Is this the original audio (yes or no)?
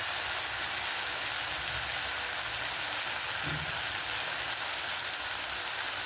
yes